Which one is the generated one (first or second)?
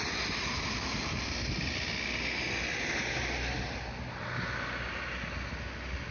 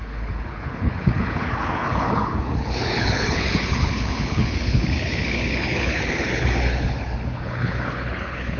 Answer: second